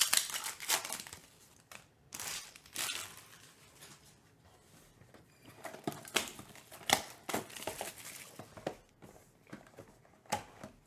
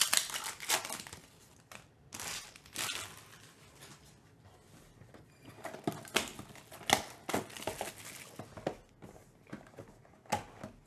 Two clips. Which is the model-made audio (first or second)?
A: first